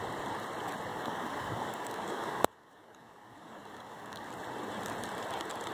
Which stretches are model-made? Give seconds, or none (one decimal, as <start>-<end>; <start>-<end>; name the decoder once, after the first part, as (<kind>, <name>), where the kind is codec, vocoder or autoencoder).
0.9-4.3 (codec, DAC)